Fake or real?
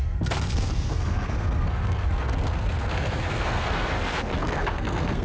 fake